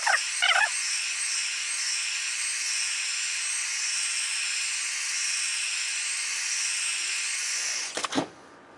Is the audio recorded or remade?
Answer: remade